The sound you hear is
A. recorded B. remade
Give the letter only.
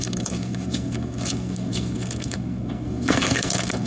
B